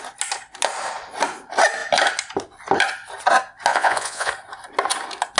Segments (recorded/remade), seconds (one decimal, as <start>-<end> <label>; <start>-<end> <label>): 0.0-3.7 recorded; 3.7-4.3 remade; 4.3-5.4 recorded